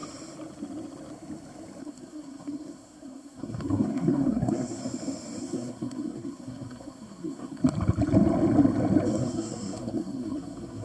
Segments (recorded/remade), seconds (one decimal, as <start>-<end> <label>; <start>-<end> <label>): 0.0-1.8 recorded; 1.8-4.8 remade; 4.8-5.4 recorded; 5.4-7.6 remade; 7.6-9.2 recorded; 9.2-10.8 remade